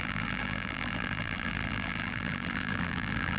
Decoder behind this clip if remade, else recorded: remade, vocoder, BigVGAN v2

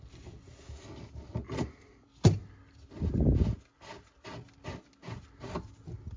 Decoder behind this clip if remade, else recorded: recorded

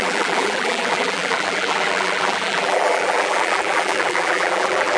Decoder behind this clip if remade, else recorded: remade, vocoder, BigVGAN v2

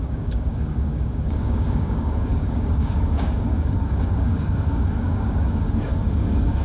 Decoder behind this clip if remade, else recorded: remade, codec, DAC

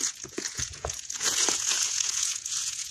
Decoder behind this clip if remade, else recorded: remade, vocoder, Vocos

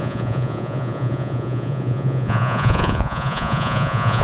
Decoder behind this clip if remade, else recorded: remade, vocoder, Vocos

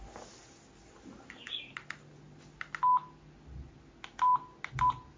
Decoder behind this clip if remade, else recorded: recorded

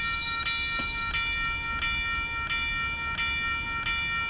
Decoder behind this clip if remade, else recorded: recorded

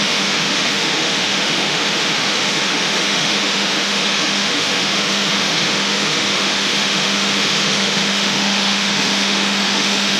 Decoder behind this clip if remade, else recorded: remade, autoencoder, DAC-VAE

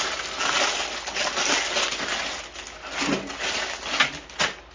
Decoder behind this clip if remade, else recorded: recorded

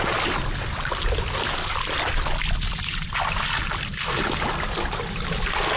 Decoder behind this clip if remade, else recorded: recorded